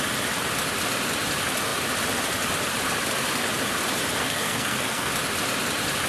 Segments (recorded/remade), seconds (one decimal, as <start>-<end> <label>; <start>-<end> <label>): 0.0-4.2 recorded; 4.2-5.1 remade; 5.1-6.1 recorded